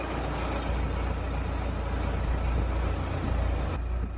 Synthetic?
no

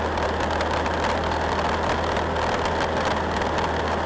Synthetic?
yes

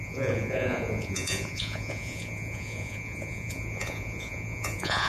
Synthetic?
yes